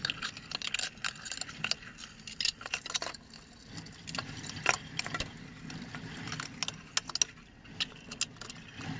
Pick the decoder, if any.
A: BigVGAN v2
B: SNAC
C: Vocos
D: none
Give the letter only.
D